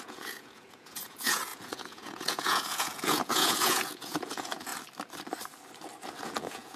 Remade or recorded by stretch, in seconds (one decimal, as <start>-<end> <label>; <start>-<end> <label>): 0.0-4.7 remade; 4.7-6.2 recorded; 6.2-6.8 remade